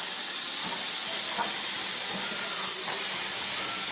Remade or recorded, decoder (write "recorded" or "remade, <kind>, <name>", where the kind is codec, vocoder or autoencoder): recorded